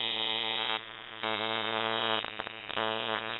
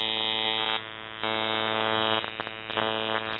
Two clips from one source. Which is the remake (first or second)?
first